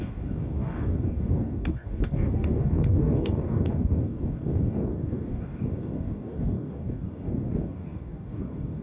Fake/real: fake